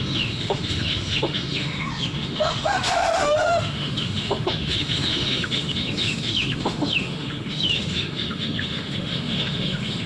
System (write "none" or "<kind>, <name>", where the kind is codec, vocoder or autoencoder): autoencoder, DAC-VAE